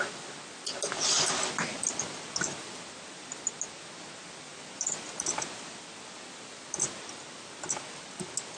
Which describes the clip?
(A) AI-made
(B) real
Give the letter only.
B